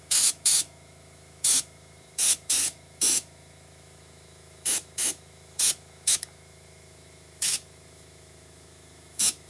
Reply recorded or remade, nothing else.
remade